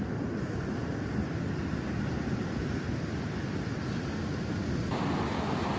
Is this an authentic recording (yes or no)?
yes